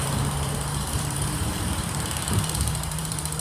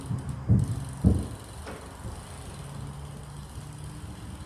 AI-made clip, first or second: first